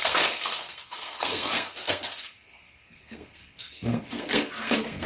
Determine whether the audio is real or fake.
fake